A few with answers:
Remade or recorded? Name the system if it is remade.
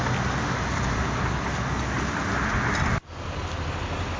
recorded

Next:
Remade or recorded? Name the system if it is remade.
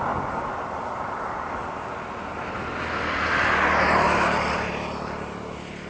recorded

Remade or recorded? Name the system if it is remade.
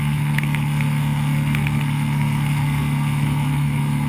remade, codec, SNAC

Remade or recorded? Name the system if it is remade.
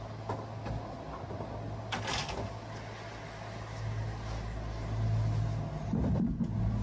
recorded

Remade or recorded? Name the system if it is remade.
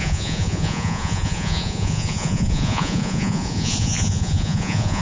remade, vocoder, Vocos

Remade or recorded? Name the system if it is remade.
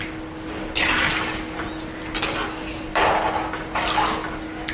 recorded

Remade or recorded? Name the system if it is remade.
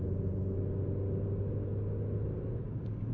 recorded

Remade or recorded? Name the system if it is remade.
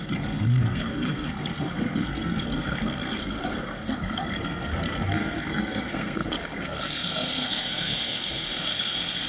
remade, codec, SNAC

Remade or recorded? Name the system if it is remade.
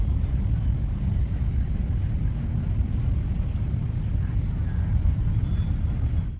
recorded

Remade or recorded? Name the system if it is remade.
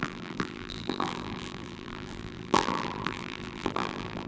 remade, vocoder, BigVGAN v2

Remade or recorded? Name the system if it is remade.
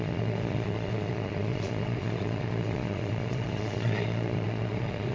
remade, vocoder, Vocos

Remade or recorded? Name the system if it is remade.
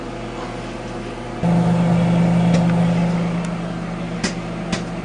recorded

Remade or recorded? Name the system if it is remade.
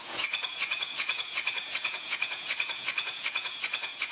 remade, vocoder, Vocos